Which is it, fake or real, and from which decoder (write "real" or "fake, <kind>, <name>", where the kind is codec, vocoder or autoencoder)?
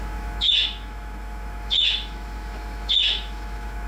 fake, autoencoder, DAC-VAE